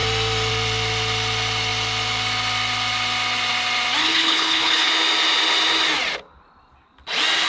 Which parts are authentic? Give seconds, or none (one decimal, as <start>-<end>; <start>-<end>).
0.0-4.0; 4.9-7.5

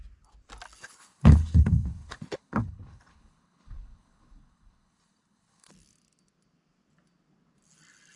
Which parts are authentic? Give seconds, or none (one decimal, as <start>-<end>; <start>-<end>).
0.0-0.8; 5.7-8.2

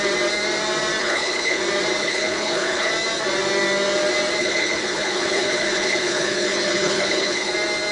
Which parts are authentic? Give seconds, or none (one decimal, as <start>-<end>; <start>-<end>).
0.0-1.0; 1.6-2.0; 2.9-4.4; 7.5-7.9

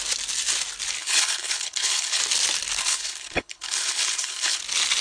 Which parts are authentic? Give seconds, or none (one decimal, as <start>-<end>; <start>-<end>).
0.0-1.0; 2.2-2.8; 4.6-5.0

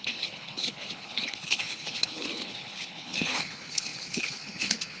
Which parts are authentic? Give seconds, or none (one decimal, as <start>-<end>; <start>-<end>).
none